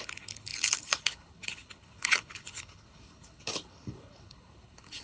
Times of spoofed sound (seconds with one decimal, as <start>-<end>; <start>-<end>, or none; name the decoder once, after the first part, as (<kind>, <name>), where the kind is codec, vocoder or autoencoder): 0.0-5.0 (codec, HILCodec)